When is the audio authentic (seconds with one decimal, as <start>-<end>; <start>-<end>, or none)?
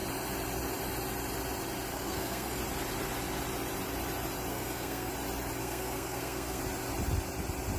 0.0-1.9; 2.6-4.5; 5.1-5.6; 6.6-7.8